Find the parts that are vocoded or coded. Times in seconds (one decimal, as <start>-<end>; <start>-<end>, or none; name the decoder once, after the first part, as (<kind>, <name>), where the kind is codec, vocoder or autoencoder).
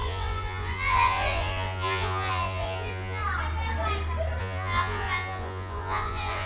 0.0-3.2 (vocoder, Vocos); 4.4-6.5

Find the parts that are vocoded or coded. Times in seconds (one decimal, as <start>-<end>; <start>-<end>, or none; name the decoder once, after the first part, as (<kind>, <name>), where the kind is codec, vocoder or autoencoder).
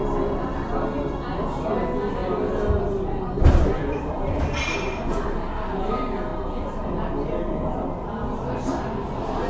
none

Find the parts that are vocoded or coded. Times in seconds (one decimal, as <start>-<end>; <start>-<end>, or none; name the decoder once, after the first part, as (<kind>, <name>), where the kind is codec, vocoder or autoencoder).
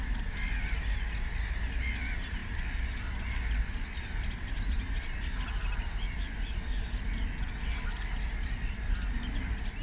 none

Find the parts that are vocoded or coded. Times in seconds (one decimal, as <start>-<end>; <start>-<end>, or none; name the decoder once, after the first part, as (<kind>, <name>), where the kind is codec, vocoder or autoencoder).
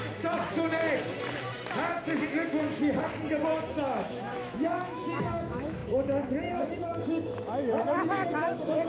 0.0-0.8 (autoencoder, DAC-VAE); 2.3-2.8; 3.7-8.9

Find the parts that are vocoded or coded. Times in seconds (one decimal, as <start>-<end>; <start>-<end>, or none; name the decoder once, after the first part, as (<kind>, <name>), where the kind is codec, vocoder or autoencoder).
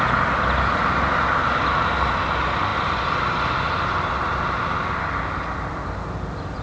none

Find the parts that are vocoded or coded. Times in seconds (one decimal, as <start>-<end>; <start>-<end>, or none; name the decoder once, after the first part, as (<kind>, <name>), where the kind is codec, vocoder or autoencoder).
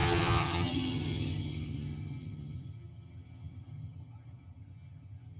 0.0-5.4 (vocoder, HiFi-GAN)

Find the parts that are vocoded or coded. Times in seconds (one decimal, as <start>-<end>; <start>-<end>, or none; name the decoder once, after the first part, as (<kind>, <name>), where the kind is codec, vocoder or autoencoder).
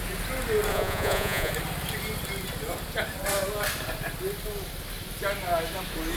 0.7-1.5 (vocoder, Vocos)